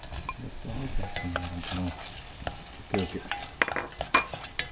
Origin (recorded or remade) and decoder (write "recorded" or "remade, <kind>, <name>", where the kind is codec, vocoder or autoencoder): recorded